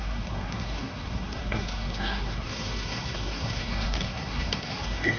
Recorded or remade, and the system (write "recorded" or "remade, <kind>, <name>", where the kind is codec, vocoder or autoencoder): remade, codec, SNAC